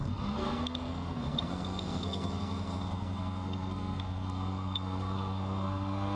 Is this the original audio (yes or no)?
no